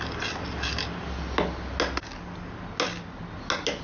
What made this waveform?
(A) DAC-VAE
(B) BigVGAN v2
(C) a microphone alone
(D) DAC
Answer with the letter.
C